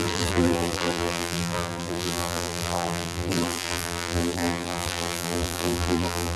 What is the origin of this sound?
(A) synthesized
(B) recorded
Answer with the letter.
A